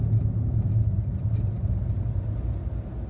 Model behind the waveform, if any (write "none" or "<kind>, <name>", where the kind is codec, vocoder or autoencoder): none